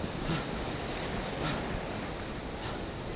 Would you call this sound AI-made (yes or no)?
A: no